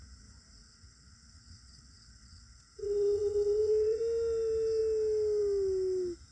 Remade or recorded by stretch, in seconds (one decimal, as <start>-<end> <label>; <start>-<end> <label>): 0.0-0.6 recorded; 0.6-4.0 remade; 4.0-6.3 recorded